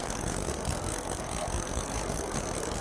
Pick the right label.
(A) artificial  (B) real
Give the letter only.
A